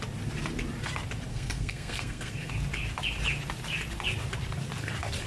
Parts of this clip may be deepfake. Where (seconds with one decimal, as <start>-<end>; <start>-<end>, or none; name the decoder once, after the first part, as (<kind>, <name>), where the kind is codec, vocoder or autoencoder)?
1.3-2.5 (codec, SNAC)